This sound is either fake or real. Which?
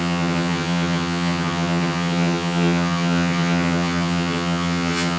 fake